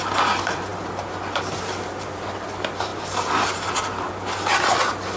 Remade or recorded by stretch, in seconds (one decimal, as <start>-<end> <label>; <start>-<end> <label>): 0.0-5.2 recorded